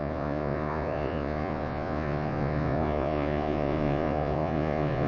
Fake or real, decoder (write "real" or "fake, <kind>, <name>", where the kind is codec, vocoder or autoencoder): fake, vocoder, Vocos